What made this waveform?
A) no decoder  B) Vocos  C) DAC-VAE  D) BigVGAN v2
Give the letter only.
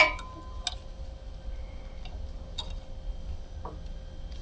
A